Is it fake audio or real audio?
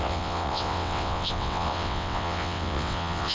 fake